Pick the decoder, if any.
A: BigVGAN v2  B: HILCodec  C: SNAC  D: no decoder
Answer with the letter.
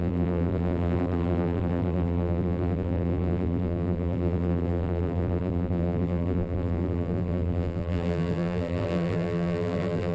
A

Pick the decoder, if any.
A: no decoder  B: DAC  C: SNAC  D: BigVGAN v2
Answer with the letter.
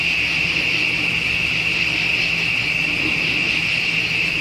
A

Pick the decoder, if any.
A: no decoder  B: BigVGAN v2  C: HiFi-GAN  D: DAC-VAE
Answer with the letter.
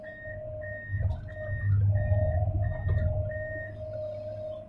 A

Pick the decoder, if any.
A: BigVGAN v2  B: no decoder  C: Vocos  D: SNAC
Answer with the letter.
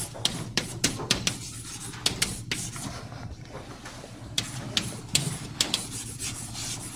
B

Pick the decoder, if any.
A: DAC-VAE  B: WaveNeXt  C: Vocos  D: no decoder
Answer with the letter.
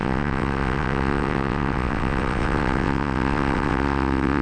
B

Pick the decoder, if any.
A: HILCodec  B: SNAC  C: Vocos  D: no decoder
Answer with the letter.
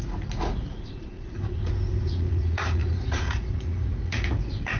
C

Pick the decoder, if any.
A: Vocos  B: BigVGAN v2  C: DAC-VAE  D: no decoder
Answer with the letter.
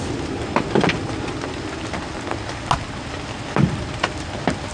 D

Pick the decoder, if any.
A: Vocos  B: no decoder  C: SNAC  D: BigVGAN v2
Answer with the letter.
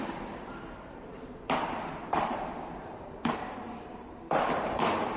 D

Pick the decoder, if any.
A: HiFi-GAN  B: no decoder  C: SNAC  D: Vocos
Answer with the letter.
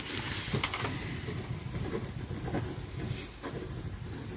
B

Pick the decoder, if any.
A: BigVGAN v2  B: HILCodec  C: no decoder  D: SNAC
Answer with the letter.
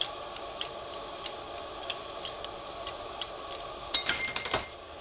A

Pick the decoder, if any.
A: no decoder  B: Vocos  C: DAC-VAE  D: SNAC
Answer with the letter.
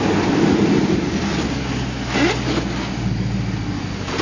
A